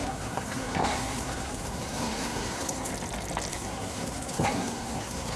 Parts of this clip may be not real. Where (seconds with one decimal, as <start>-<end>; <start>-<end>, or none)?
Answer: 0.0-2.9; 3.5-5.4